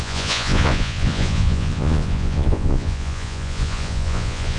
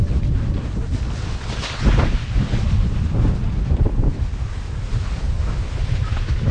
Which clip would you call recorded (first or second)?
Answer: second